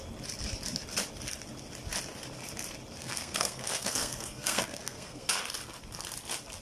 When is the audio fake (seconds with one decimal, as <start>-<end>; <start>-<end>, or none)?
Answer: 3.0-5.4